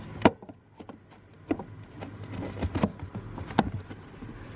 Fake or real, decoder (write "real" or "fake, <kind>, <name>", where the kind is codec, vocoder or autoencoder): real